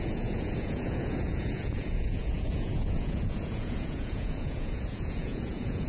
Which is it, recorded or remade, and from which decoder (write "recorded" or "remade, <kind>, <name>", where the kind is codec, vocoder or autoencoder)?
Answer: remade, vocoder, Vocos